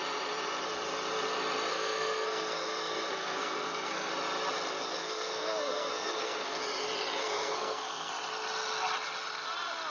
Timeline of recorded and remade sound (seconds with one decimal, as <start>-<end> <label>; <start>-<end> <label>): 0.0-1.7 recorded; 1.7-4.1 remade; 4.1-5.0 recorded; 5.0-6.6 remade; 6.6-7.2 recorded; 7.2-8.1 remade; 8.1-9.9 recorded